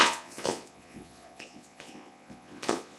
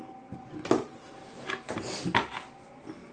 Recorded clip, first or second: second